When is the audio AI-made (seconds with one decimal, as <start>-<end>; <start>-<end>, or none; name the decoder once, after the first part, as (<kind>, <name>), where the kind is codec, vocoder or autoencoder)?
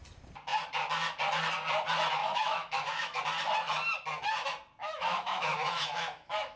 2.2-3.2 (autoencoder, DAC-VAE); 4.8-6.6